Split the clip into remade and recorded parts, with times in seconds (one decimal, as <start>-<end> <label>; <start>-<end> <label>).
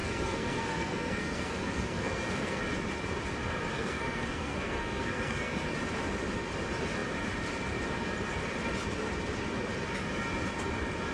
0.0-2.6 remade; 2.6-3.7 recorded; 3.7-5.7 remade; 5.7-11.1 recorded